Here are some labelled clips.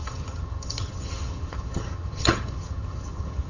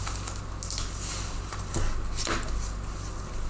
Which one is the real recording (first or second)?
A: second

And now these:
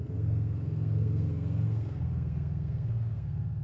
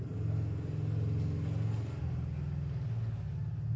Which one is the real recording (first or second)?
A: second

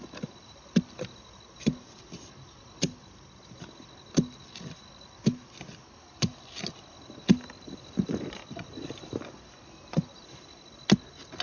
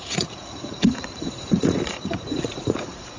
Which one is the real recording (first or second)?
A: first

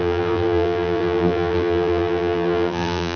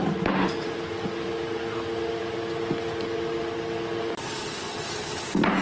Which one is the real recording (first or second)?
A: second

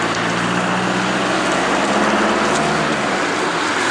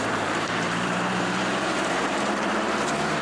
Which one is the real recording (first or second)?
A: first